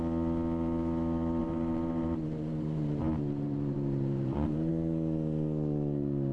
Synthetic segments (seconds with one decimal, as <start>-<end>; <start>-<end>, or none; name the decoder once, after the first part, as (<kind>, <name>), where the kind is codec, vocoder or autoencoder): 1.4-4.7 (vocoder, BigVGAN v2)